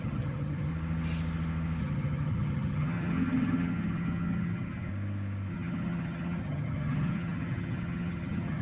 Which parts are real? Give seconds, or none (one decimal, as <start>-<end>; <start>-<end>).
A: 0.7-1.8; 4.9-5.5